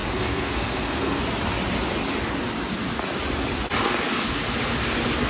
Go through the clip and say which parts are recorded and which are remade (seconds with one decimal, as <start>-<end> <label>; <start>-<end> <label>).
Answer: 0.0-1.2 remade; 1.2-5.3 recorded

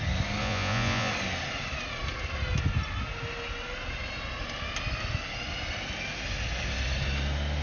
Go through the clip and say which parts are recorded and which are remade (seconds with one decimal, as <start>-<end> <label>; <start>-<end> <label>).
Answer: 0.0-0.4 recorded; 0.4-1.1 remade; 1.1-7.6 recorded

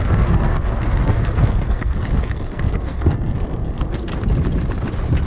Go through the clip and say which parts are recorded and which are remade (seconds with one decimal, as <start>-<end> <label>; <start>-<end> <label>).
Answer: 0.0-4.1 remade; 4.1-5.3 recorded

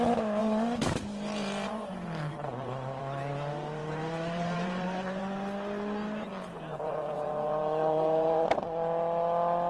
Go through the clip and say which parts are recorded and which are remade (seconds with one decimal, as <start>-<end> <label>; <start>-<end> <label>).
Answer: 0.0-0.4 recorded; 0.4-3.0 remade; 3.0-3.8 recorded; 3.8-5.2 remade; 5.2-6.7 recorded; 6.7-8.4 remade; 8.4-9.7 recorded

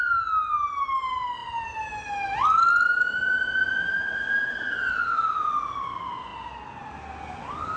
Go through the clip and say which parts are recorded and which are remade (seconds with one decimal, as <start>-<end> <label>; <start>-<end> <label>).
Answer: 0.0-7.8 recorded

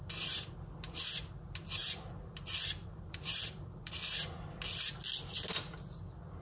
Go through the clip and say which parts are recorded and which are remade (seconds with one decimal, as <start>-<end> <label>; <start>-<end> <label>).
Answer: 0.0-1.8 recorded; 1.8-4.9 remade; 4.9-6.4 recorded